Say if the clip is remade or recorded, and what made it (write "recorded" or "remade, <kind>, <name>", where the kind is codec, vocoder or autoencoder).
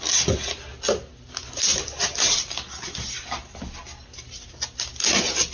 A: recorded